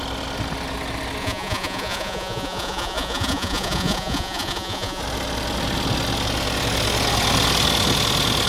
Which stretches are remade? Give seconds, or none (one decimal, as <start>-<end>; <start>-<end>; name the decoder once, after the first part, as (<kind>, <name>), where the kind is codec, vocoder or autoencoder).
1.2-5.0 (vocoder, Vocos)